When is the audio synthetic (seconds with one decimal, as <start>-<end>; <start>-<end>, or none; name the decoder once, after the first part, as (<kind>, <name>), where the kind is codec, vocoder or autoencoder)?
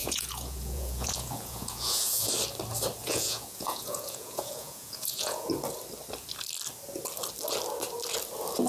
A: 0.0-2.3 (vocoder, Vocos); 3.0-5.5